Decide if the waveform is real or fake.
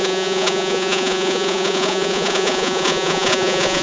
fake